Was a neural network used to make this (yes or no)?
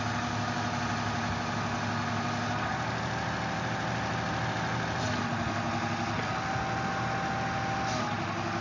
no